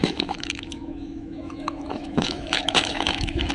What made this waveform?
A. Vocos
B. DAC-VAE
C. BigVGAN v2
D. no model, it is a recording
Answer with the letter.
B